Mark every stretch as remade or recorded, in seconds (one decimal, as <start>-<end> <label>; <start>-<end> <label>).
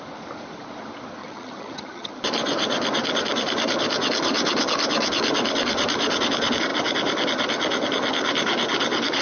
0.0-1.2 recorded; 1.2-2.1 remade; 2.1-9.2 recorded